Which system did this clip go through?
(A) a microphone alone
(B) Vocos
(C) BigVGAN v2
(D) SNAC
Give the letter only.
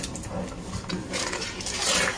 A